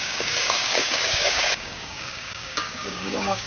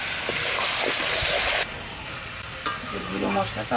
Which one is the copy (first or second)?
first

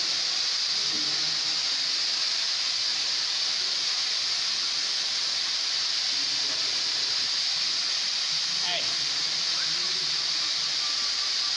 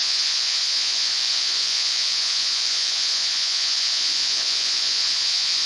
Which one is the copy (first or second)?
second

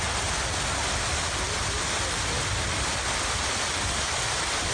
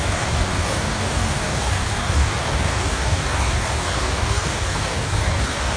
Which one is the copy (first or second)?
second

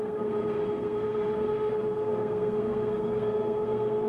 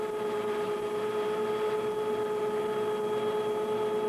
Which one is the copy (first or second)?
first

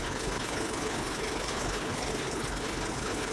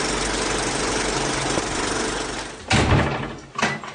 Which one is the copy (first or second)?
first